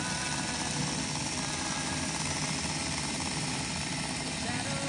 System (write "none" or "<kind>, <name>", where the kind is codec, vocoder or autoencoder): none